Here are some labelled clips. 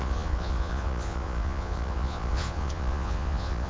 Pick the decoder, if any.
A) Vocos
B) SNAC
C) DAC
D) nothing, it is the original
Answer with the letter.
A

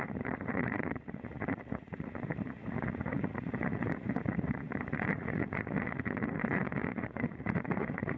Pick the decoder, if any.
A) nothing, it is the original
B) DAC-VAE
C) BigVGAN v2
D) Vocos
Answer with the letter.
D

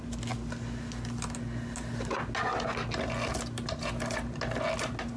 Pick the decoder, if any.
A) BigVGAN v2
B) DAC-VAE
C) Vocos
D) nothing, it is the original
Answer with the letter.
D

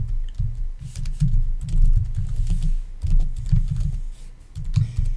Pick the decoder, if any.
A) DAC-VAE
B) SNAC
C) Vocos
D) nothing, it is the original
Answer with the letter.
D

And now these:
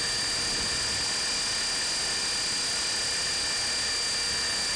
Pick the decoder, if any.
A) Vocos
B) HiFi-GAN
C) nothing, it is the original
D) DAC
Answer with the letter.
C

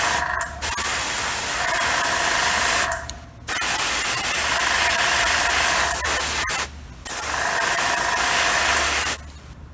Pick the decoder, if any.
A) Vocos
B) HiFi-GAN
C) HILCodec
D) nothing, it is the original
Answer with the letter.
D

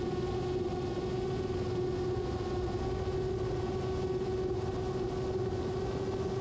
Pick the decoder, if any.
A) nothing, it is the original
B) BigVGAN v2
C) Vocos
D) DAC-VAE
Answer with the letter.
A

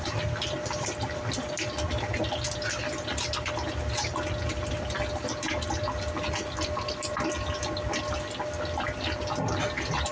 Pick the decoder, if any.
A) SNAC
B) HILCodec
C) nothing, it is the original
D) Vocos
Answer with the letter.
C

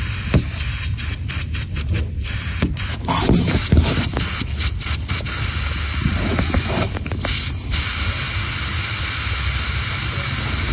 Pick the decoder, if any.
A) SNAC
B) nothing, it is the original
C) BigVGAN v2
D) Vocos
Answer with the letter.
B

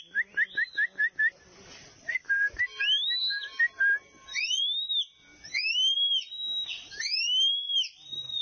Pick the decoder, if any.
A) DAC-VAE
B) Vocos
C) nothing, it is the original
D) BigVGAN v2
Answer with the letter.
C